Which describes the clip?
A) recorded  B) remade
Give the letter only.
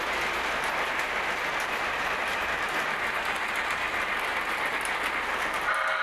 A